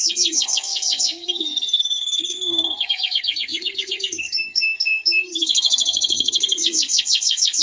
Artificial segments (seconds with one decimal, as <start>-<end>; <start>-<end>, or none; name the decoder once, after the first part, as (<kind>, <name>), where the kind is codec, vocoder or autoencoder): 0.0-7.6 (codec, SNAC)